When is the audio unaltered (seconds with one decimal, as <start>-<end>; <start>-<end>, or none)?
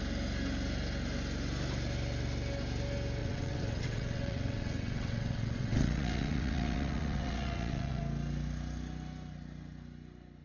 0.0-3.2; 8.0-10.4